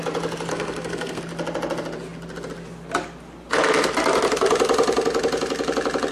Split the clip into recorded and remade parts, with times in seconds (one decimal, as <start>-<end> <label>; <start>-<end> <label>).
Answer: 0.0-0.5 recorded; 0.5-1.2 remade; 1.2-6.1 recorded